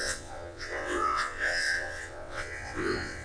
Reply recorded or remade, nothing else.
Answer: remade